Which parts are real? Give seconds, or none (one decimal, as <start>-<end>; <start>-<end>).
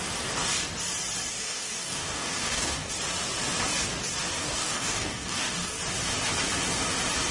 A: 0.0-1.3; 2.9-4.4; 5.8-7.3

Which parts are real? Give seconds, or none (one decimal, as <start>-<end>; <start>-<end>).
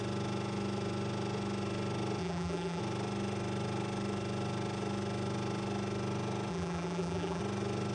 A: 0.0-2.2; 2.8-6.5; 7.4-7.9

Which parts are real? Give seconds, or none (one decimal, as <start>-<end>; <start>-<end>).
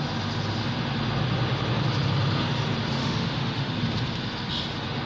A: 0.0-3.0; 3.7-5.1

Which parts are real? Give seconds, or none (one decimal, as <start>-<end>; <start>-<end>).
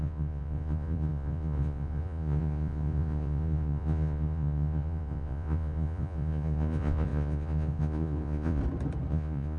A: 8.6-9.1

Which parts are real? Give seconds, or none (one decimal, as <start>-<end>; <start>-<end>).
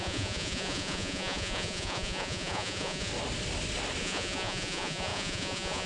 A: 3.1-4.0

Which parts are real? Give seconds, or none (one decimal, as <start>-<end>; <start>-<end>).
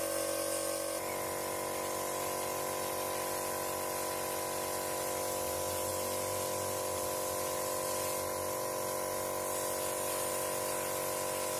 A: 0.0-11.6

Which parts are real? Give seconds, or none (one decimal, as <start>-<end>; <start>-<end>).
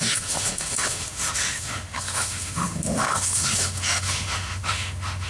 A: none